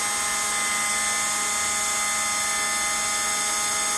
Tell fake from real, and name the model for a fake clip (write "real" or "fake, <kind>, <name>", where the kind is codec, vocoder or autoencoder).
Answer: real